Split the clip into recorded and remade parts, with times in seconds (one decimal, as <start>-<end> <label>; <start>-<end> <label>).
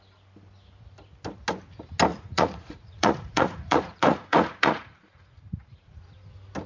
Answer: 0.0-2.1 recorded; 2.1-6.1 remade; 6.1-6.7 recorded